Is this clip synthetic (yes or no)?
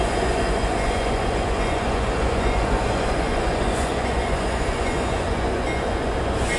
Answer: yes